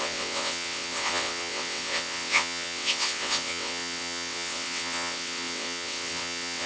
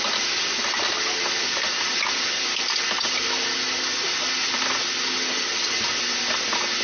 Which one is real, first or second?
second